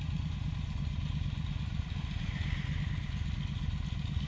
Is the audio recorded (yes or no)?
yes